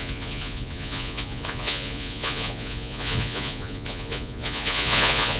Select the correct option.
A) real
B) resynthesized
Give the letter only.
B